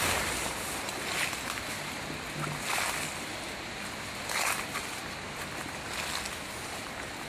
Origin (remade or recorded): recorded